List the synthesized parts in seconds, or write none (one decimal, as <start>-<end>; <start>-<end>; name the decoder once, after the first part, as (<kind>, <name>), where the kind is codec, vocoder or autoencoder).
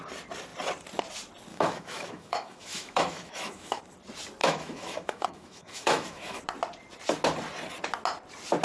1.5-3.8 (autoencoder, DAC-VAE); 4.4-6.4